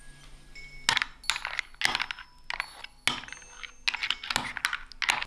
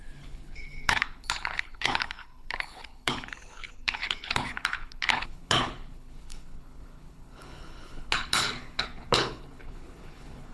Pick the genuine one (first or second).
first